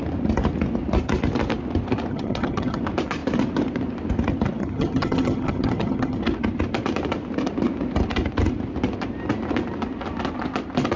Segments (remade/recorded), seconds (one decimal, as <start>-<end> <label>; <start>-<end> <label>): 0.0-2.1 recorded; 2.1-2.8 remade; 2.8-4.6 recorded; 4.6-6.2 remade; 6.2-11.0 recorded